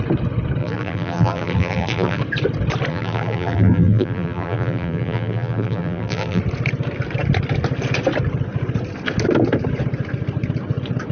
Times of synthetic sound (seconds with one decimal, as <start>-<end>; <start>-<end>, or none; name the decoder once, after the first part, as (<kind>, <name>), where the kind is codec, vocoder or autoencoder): 0.6-2.2 (vocoder, BigVGAN v2); 2.9-6.4